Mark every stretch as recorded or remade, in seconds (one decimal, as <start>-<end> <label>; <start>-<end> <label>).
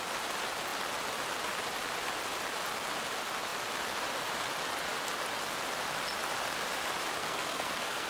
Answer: 0.0-7.2 recorded; 7.2-8.1 remade